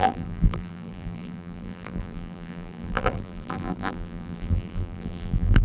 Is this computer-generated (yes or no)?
yes